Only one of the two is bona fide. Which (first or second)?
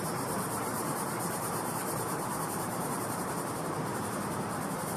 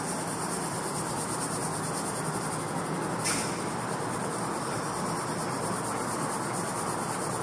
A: second